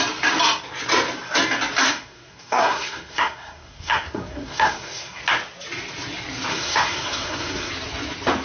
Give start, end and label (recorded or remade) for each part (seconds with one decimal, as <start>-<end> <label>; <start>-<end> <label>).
0.0-1.8 recorded; 1.8-5.2 remade; 5.2-6.5 recorded; 6.5-7.7 remade; 7.7-8.4 recorded